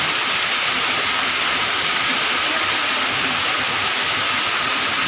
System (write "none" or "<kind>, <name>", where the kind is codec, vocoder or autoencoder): none